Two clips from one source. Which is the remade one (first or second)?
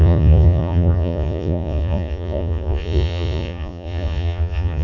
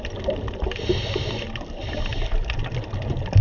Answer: first